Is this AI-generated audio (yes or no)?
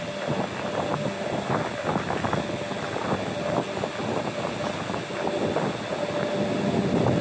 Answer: no